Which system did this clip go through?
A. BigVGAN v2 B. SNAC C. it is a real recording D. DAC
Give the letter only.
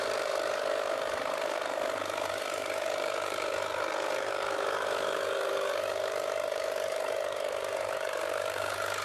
D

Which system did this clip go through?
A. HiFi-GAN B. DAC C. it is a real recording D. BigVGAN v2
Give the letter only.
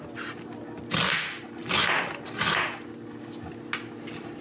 C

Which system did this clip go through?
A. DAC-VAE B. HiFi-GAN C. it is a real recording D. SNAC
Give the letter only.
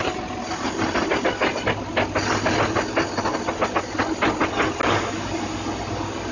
C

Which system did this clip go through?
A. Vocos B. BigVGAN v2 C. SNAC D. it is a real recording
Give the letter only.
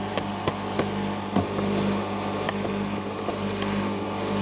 D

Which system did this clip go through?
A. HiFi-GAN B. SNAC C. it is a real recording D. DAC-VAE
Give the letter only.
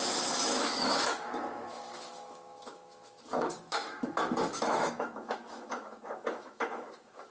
D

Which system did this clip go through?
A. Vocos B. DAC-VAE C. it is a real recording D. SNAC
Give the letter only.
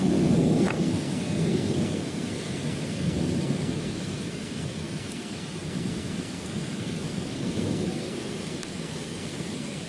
D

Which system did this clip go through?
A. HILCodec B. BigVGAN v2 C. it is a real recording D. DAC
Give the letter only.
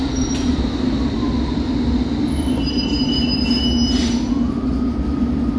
C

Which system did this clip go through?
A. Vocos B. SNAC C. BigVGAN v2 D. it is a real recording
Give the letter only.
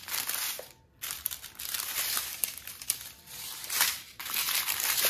C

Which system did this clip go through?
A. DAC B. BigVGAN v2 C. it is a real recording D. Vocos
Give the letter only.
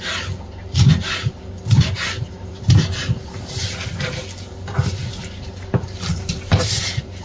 B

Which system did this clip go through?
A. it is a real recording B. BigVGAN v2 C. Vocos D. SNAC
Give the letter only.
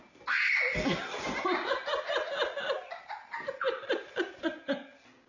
A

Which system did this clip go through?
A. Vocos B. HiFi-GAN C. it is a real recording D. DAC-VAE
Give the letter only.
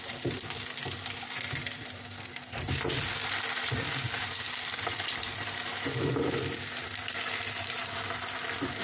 C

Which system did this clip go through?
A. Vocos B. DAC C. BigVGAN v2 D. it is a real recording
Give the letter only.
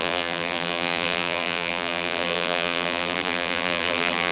C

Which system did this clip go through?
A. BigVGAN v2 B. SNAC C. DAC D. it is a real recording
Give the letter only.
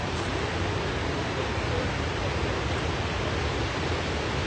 D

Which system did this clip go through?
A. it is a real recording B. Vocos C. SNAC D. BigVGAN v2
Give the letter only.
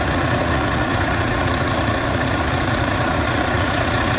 B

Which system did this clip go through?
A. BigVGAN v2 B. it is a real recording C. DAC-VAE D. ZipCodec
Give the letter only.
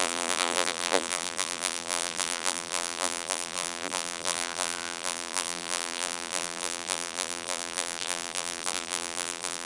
A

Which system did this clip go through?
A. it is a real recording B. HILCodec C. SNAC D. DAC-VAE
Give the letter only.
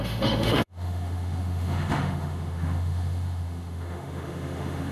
D